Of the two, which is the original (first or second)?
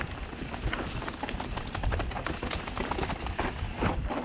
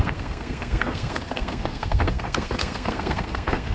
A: first